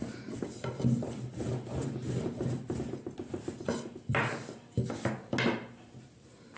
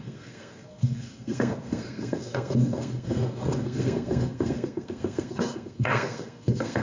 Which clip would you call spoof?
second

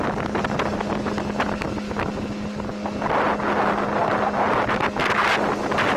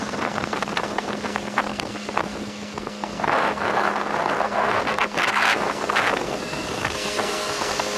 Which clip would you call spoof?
second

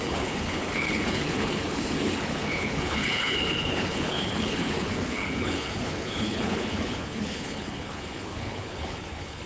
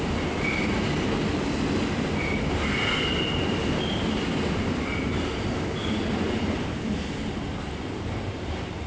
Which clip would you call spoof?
first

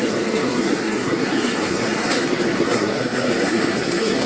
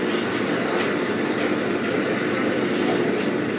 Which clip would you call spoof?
first